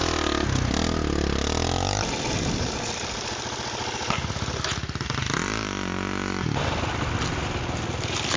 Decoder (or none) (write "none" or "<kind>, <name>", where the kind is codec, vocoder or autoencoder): none